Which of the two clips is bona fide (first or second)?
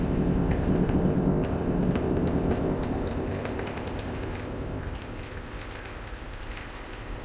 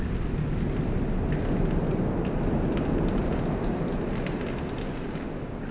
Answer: second